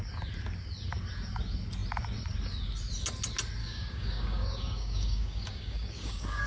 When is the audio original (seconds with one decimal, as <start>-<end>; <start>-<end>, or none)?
0.0-3.6